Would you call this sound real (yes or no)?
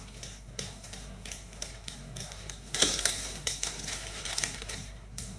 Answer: no